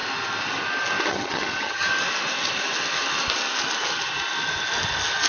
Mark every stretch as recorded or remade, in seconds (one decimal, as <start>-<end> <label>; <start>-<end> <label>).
0.0-1.1 recorded; 1.1-1.9 remade; 1.9-5.3 recorded